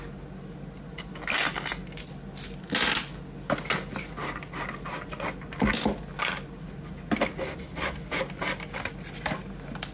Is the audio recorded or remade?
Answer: recorded